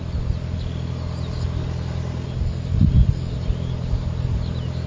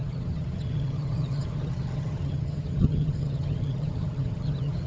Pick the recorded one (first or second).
first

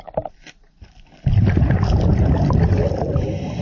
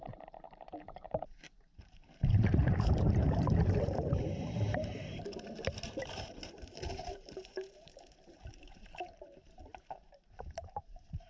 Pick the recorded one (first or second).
first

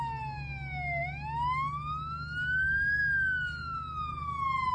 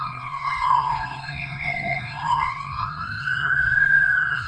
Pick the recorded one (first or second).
first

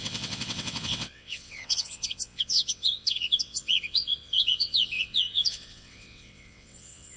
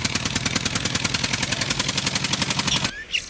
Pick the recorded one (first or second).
second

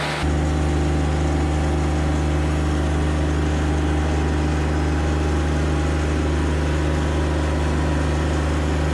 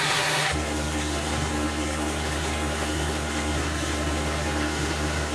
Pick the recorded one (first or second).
first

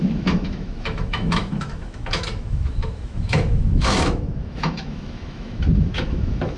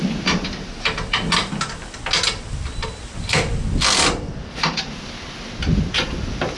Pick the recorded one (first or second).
second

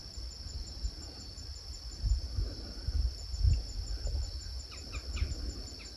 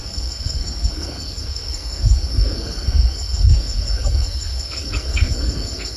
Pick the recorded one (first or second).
first